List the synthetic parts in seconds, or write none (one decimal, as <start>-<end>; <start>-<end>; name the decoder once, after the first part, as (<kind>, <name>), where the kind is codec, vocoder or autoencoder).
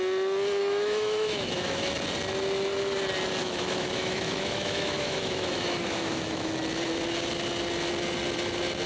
0.6-1.9 (autoencoder, DAC-VAE); 3.4-6.5